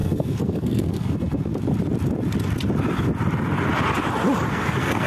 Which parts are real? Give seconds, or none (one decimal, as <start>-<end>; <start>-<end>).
1.5-4.5